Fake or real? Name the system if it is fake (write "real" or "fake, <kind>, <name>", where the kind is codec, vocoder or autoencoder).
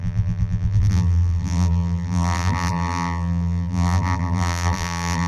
fake, vocoder, BigVGAN v2